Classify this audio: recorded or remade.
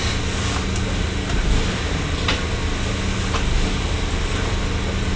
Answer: recorded